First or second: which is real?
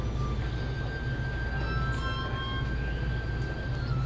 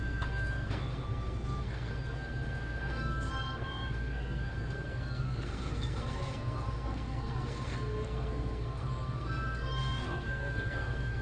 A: first